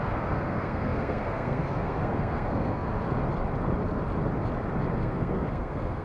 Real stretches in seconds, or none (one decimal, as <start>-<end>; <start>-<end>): 2.9-4.9